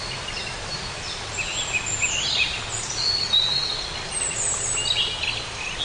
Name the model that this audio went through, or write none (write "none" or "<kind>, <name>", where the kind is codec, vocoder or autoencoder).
none